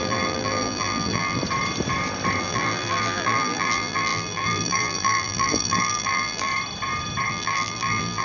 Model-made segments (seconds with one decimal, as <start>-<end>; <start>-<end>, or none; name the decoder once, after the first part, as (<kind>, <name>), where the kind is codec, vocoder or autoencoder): 0.0-1.4 (vocoder, BigVGAN v2); 2.4-6.5; 7.3-8.2